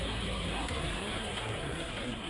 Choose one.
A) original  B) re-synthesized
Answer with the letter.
B